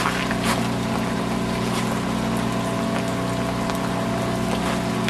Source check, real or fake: real